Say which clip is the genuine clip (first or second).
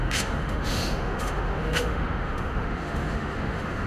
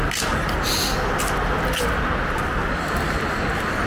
second